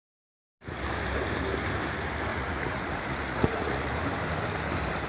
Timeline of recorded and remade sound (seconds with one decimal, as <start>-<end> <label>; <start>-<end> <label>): 0.0-2.3 recorded; 2.3-3.9 remade; 3.9-5.1 recorded